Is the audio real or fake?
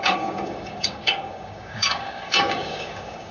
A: fake